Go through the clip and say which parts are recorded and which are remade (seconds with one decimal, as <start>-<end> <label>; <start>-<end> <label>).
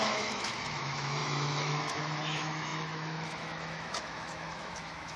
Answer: 0.0-5.2 remade